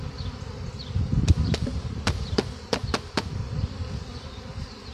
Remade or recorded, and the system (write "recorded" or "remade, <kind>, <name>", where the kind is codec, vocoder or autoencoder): remade, vocoder, BigVGAN v2